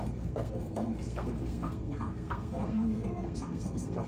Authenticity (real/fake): fake